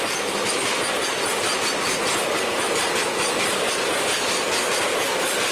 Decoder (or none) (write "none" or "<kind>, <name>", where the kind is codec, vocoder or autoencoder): none